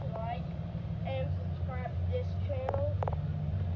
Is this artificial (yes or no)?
no